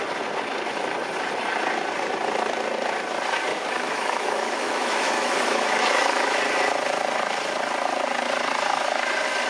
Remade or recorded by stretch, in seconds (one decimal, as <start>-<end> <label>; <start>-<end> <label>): 0.0-3.5 recorded; 3.5-6.4 remade; 6.4-9.5 recorded